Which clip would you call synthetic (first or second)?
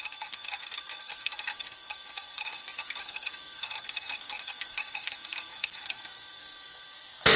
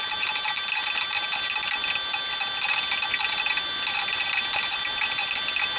first